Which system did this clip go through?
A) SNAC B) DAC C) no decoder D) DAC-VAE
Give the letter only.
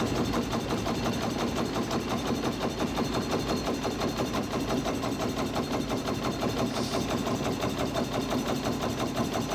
C